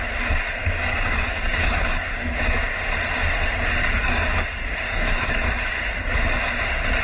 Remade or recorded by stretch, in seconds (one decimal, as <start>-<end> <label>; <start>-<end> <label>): 0.0-0.6 recorded; 0.6-2.4 remade; 2.4-3.8 recorded; 3.8-5.3 remade; 5.3-7.0 recorded